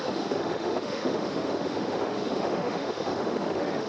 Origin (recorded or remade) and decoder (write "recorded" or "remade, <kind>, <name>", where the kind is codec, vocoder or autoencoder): remade, autoencoder, DAC-VAE